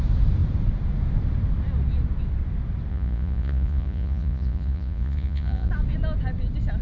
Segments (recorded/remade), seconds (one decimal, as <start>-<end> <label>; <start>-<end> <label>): 0.0-2.9 recorded; 2.9-5.7 remade; 5.7-6.8 recorded